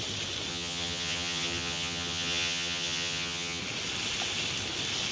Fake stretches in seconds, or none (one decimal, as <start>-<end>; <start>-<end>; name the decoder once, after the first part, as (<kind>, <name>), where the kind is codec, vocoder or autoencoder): 0.5-3.6 (vocoder, HiFi-GAN)